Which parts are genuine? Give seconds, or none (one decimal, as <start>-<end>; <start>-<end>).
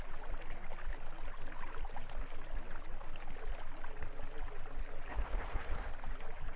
0.0-5.1; 5.9-6.6